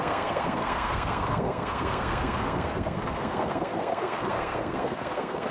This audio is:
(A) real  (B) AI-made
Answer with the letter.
B